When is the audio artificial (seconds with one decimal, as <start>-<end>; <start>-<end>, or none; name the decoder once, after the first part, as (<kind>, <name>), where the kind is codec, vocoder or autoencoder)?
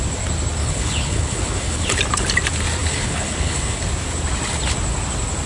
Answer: 0.6-2.0 (codec, HILCodec); 2.8-3.8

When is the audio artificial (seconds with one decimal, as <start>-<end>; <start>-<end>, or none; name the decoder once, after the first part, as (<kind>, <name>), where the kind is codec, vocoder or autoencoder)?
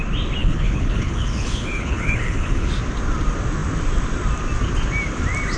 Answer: 0.4-2.7 (codec, HILCodec)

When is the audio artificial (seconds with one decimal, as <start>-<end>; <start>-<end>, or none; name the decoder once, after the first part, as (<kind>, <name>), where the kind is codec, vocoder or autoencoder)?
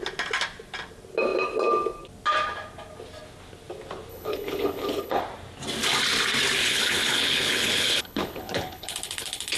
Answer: 4.1-5.2 (codec, HILCodec); 6.6-9.6